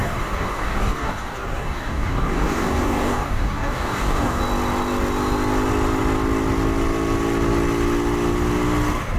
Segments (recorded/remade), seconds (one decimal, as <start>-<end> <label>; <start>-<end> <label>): 0.0-4.4 remade; 4.4-9.2 recorded